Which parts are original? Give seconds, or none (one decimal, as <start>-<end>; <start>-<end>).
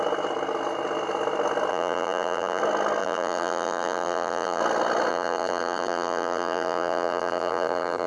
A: 0.0-1.7; 2.6-3.0; 4.6-5.1